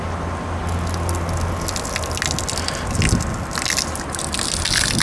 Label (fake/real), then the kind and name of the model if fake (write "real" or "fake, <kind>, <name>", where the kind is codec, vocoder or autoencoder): real